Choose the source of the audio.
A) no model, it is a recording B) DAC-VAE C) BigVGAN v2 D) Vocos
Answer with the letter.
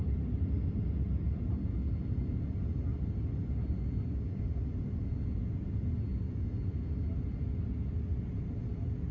A